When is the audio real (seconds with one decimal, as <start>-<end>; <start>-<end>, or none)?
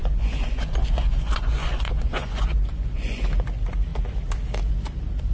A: 3.2-5.3